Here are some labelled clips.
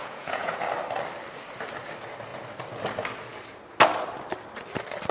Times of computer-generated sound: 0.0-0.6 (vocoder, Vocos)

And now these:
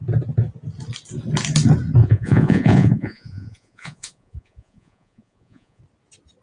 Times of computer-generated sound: 2.0-5.8 (vocoder, Vocos)

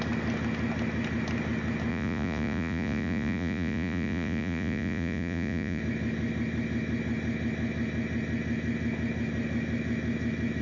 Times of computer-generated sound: 1.9-5.8 (vocoder, Vocos)

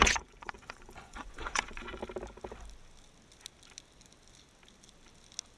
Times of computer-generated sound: 0.0-2.0 (vocoder, Vocos)

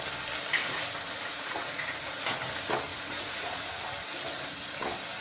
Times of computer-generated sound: 0.6-2.2 (vocoder, Vocos); 2.9-3.8